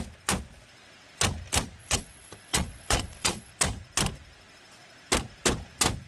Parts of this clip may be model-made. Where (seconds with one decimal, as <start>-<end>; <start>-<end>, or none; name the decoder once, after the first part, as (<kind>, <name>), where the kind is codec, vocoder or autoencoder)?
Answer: 1.8-3.5 (vocoder, Vocos)